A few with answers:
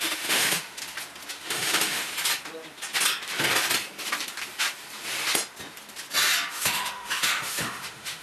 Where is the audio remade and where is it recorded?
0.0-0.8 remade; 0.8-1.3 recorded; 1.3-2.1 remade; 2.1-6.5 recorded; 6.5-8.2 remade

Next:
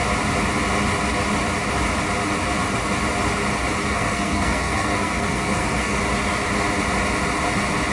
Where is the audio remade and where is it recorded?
0.0-3.8 recorded; 3.8-6.0 remade; 6.0-7.9 recorded